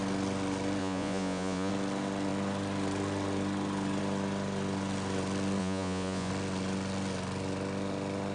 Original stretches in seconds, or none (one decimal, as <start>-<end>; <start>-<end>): 0.0-0.8; 1.7-5.6; 6.3-8.3